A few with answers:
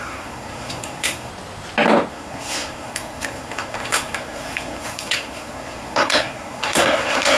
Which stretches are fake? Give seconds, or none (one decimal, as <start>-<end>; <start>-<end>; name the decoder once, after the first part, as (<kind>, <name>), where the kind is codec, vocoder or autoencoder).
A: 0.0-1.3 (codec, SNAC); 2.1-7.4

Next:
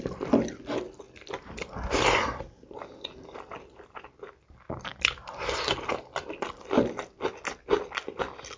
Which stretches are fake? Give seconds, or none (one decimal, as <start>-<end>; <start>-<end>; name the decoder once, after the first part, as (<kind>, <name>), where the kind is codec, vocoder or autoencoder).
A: none

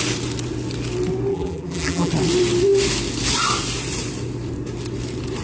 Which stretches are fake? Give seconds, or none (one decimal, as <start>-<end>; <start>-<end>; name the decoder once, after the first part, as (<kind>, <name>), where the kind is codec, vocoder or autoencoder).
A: 1.3-2.1 (vocoder, BigVGAN v2)

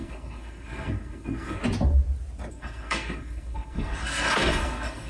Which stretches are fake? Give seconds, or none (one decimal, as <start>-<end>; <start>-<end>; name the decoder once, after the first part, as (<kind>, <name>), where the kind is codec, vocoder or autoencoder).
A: 0.0-1.6 (codec, SNAC); 2.5-5.1

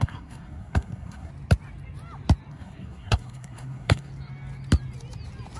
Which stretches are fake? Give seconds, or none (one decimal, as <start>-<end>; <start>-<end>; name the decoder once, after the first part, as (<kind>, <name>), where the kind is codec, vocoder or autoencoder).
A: 0.0-1.3 (codec, SNAC); 2.5-4.1

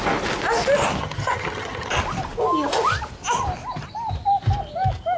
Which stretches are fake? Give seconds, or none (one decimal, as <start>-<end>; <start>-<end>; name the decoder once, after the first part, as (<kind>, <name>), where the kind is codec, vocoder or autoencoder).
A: 1.0-1.9 (vocoder, HiFi-GAN)

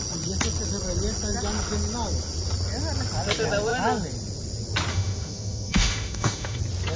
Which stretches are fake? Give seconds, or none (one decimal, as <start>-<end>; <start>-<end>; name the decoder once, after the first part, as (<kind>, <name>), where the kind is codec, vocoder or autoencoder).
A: 4.9-6.6 (autoencoder, DAC-VAE)